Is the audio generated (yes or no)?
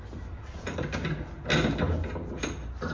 no